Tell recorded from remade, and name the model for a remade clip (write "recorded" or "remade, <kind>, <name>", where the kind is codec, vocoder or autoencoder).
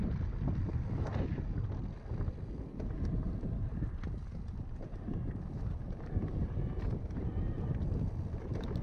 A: recorded